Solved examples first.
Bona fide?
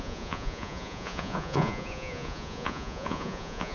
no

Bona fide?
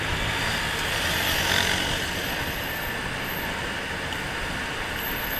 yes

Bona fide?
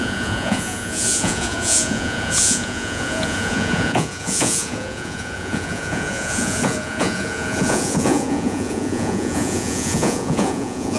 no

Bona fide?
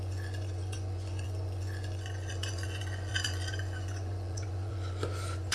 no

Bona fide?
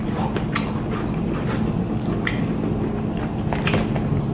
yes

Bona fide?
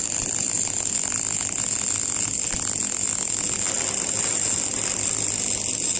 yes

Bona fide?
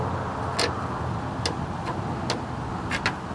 yes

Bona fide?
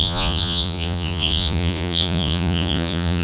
no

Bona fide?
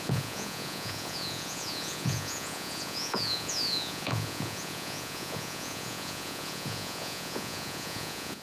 no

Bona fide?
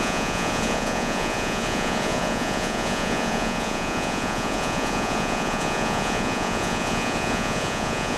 no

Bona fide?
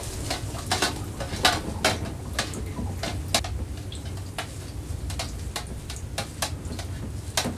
yes